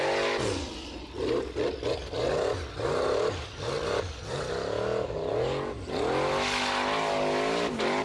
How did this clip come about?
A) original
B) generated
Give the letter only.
A